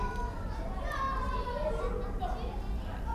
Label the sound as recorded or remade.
recorded